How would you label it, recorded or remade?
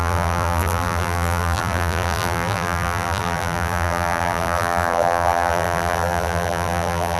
remade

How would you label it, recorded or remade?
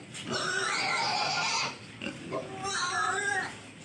recorded